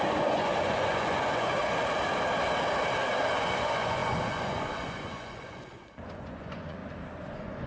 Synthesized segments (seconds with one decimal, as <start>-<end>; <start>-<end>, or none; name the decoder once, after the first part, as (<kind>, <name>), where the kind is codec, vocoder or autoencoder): 0.0-1.6 (vocoder, Vocos); 3.3-6.8; 7.3-7.7